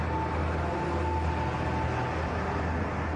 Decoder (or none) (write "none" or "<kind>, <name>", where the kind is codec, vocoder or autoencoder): none